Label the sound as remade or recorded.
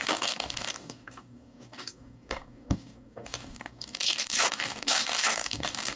remade